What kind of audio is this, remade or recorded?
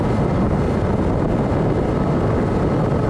recorded